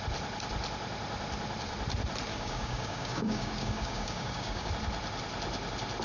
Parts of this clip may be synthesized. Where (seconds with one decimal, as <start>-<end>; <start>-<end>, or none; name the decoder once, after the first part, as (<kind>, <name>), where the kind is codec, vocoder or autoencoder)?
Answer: 2.3-4.7 (codec, DAC)